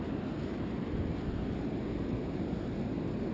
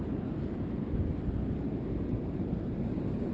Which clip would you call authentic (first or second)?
first